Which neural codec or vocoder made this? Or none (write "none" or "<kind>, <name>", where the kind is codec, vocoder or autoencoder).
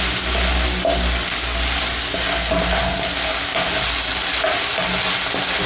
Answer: none